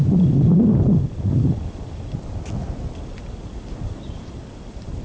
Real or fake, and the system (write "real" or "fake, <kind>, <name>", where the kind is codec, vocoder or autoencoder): real